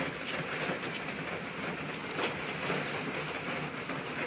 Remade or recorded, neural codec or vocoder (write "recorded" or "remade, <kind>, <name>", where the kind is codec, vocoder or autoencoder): recorded